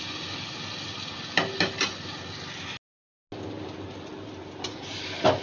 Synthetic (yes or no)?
no